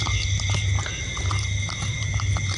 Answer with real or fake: real